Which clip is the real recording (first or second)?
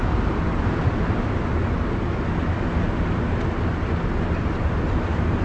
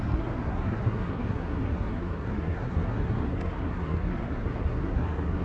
first